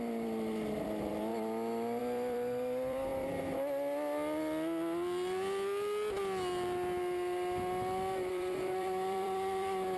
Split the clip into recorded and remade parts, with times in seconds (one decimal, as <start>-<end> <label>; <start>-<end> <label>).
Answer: 0.0-1.3 remade; 1.3-2.0 recorded; 2.0-3.1 remade; 3.1-8.3 recorded; 8.3-10.0 remade